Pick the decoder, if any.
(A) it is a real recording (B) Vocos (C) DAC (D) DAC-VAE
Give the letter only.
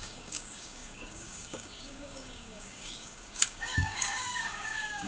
C